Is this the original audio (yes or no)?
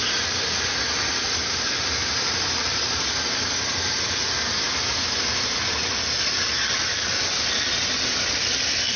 yes